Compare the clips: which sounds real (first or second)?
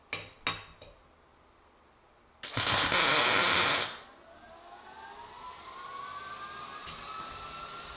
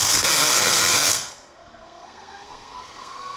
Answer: first